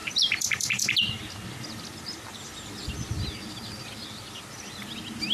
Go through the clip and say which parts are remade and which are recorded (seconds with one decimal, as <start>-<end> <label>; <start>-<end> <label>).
0.0-1.0 remade; 1.0-5.3 recorded